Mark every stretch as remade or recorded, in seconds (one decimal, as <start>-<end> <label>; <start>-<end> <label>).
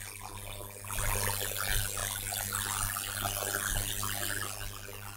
0.0-5.2 recorded